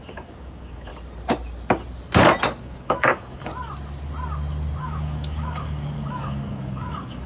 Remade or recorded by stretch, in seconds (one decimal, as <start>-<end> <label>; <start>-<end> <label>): 0.0-0.9 remade; 0.9-2.6 recorded; 2.6-3.5 remade; 3.5-4.8 recorded; 4.8-7.3 remade